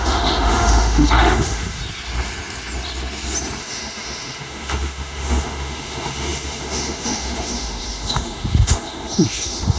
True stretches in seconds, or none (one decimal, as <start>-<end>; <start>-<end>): 1.8-3.6